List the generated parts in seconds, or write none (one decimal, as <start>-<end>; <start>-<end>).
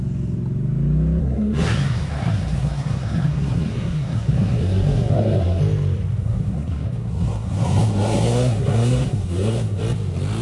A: 1.2-5.6; 6.2-9.8